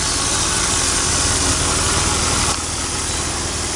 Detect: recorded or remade recorded